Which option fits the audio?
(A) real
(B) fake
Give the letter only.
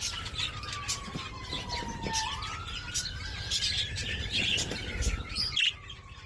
A